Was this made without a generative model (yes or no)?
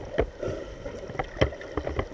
yes